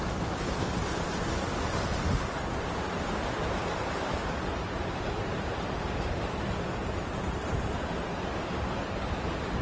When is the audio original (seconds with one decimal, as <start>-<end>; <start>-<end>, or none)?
0.0-9.6